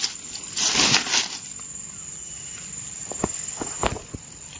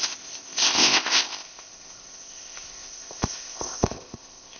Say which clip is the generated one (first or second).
second